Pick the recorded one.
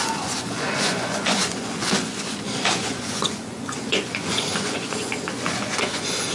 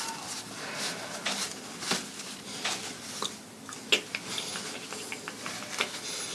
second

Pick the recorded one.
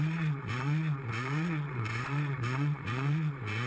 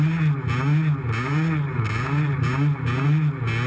second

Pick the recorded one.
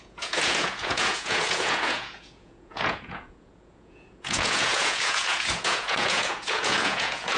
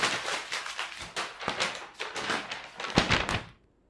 second